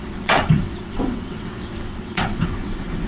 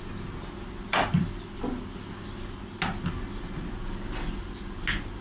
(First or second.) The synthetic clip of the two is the first